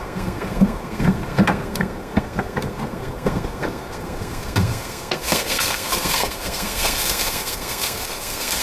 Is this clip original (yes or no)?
no